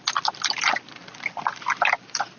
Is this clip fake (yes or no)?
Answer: no